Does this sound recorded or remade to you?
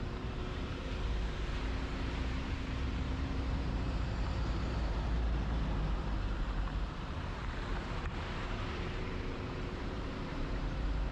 remade